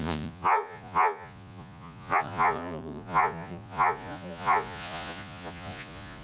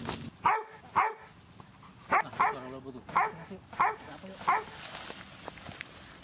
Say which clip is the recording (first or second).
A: second